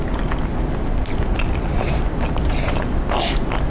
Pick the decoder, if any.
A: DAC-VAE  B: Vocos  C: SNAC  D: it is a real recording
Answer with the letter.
D